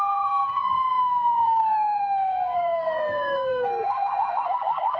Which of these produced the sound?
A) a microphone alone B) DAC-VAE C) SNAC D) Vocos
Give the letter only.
C